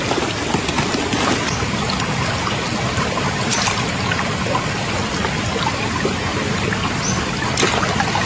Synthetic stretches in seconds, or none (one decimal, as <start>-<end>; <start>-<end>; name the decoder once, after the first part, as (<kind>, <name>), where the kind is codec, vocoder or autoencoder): none